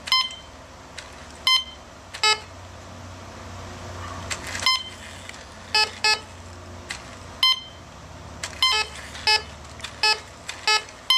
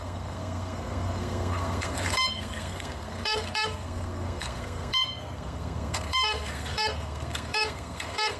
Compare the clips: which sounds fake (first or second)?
second